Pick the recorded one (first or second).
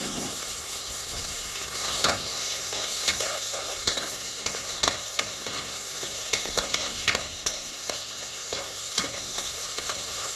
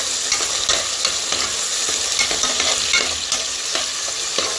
second